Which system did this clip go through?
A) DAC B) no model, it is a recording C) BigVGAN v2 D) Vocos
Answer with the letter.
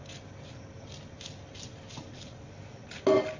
B